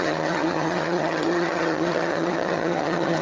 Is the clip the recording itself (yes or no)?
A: no